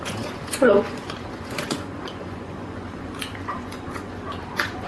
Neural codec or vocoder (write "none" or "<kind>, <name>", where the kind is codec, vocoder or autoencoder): vocoder, Vocos